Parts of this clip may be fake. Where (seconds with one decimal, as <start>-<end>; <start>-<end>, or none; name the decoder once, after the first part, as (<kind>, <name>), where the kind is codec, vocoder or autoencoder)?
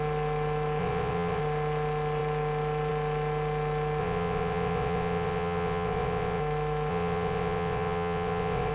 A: 0.8-1.4 (vocoder, WaveNeXt); 4.0-6.4; 6.9-8.7